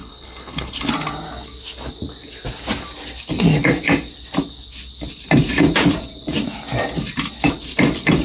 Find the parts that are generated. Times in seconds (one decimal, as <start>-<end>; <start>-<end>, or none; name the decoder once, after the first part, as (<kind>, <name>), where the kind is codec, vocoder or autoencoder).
0.0-0.9 (codec, HILCodec)

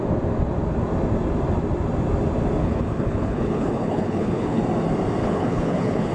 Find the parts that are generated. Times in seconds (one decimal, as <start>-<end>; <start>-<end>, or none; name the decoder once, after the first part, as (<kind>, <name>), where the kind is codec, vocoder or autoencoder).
2.6-4.6 (codec, HILCodec); 5.2-6.1